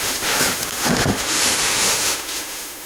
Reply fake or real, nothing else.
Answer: fake